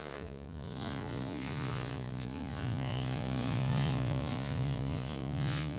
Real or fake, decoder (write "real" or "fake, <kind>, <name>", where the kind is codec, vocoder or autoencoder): fake, vocoder, Vocos